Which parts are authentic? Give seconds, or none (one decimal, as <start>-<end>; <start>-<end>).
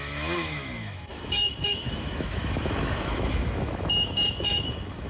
none